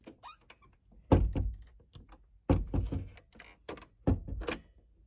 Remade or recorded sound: recorded